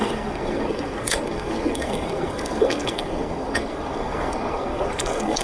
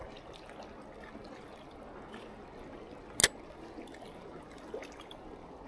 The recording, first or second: second